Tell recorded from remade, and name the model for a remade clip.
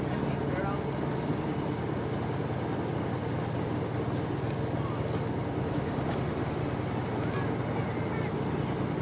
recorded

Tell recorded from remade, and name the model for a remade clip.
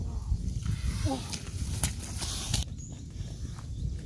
recorded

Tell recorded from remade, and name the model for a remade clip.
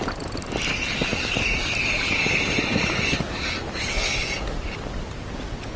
recorded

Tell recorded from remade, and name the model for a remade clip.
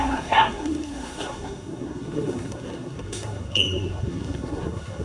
remade, codec, SNAC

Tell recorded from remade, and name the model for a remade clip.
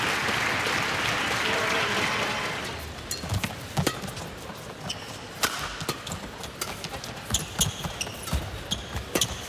recorded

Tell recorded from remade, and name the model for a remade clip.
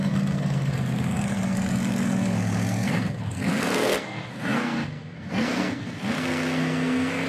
remade, codec, SNAC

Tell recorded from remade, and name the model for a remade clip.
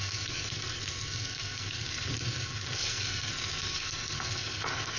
remade, codec, SNAC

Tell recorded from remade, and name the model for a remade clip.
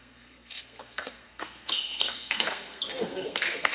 remade, codec, SNAC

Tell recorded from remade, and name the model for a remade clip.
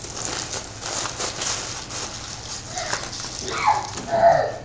recorded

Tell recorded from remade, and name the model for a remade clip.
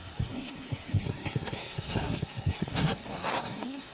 remade, codec, SNAC